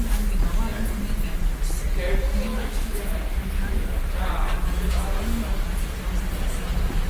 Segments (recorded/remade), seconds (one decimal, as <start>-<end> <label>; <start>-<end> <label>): 0.0-2.5 recorded; 2.5-3.1 remade; 3.1-7.1 recorded